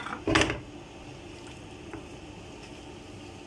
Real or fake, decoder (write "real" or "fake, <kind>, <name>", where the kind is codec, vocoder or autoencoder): real